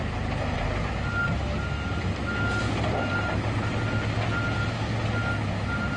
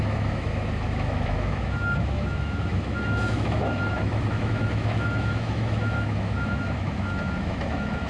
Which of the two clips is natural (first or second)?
first